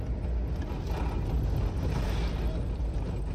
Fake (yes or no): no